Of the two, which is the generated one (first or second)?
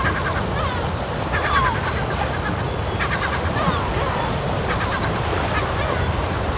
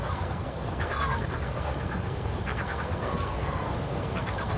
second